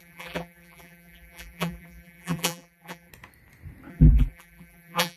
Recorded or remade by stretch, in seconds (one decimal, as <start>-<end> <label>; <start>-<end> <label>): 0.0-3.1 remade; 3.1-3.9 recorded; 3.9-5.2 remade